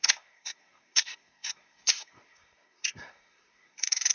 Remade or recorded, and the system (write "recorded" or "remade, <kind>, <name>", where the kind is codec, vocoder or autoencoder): remade, codec, SNAC